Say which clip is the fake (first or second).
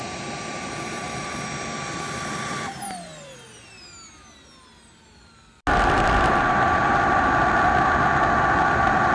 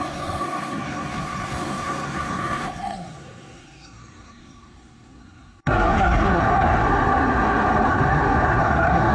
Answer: second